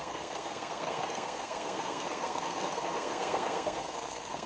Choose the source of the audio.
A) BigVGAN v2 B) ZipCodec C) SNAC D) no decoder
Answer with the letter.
C